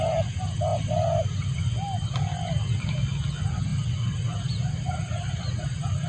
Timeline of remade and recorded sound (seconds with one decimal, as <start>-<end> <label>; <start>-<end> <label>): 0.0-6.1 recorded